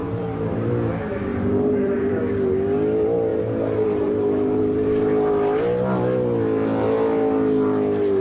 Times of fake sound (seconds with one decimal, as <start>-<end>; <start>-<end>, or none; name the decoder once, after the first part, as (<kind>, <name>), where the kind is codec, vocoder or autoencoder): 0.0-0.7 (vocoder, BigVGAN v2); 1.3-2.2; 3.3-4.6